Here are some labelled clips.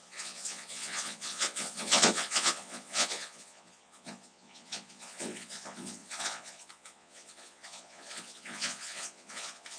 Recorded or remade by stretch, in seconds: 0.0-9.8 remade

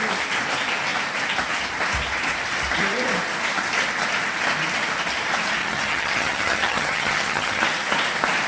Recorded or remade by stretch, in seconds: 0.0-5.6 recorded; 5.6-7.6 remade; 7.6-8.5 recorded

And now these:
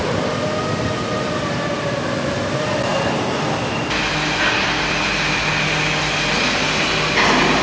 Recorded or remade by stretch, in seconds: 0.0-7.6 recorded